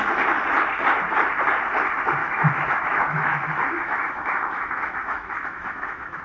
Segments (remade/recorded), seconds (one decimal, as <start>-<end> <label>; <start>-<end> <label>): 0.0-2.2 recorded; 2.2-6.2 remade